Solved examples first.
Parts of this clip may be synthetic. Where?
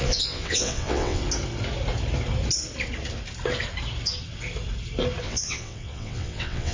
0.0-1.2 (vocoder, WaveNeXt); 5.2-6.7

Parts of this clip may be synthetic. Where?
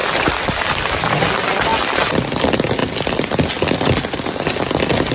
none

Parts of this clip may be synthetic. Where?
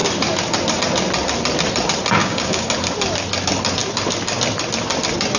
2.2-2.7 (codec, DAC)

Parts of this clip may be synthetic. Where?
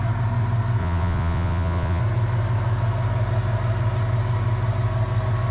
0.8-2.0 (vocoder, Vocos)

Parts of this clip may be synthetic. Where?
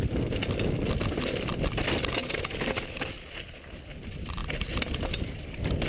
none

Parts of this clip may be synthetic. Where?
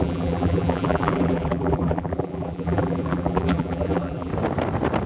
0.0-4.3 (vocoder, BigVGAN v2)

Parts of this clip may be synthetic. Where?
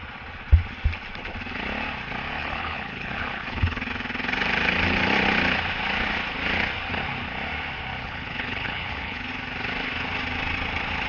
2.4-3.9 (codec, HILCodec); 8.0-9.3